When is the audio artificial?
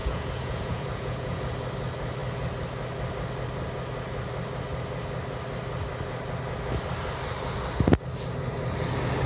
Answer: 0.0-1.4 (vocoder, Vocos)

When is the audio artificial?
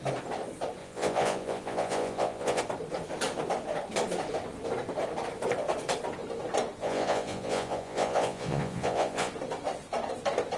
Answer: 0.8-2.6 (vocoder, Vocos); 6.8-9.3